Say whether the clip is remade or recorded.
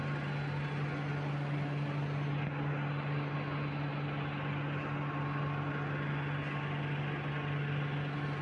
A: recorded